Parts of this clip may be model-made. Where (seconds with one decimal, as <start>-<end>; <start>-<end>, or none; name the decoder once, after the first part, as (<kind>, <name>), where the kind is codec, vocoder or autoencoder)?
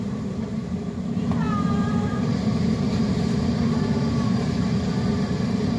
0.0-5.8 (vocoder, BigVGAN v2)